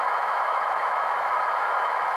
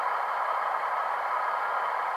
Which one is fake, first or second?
first